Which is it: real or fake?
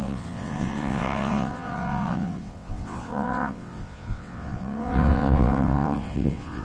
fake